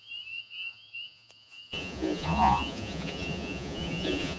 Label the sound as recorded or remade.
remade